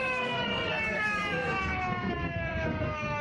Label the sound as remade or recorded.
remade